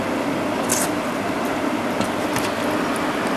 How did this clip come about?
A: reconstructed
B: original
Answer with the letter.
B